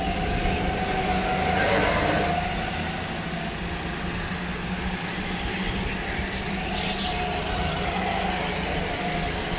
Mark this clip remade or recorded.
recorded